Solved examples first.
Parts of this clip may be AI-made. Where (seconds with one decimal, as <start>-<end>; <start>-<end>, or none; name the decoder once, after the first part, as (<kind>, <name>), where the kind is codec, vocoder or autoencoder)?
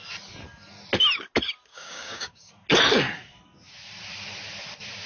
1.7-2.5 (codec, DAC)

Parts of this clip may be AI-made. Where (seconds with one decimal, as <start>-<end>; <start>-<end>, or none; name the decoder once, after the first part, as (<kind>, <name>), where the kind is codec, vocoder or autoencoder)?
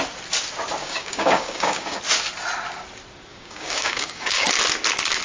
0.8-2.0 (codec, DAC); 3.3-4.5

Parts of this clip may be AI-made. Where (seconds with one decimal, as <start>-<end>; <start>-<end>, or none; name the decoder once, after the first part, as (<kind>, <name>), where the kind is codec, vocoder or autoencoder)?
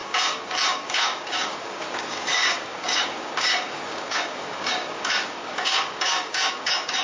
0.0-7.0 (codec, DAC)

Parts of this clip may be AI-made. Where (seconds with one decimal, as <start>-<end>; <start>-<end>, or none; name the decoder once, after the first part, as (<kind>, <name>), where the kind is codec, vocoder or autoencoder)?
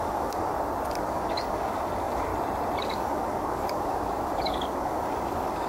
0.0-0.5 (codec, DAC); 1.1-2.3; 2.8-5.7